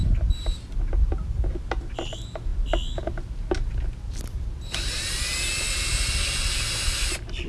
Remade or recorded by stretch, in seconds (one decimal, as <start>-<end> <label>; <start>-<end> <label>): 0.0-7.5 recorded